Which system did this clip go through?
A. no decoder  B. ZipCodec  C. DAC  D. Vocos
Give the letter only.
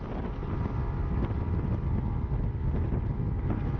A